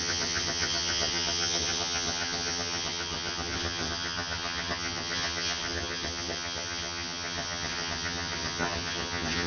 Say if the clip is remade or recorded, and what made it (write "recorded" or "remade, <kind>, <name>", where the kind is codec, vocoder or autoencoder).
remade, vocoder, HiFi-GAN